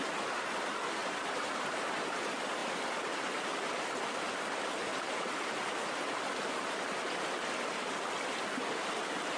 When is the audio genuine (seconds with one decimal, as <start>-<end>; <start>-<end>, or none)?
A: 0.0-1.0; 1.8-2.6; 3.3-4.9; 5.6-9.4